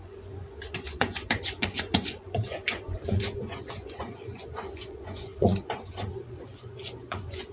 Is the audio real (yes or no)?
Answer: no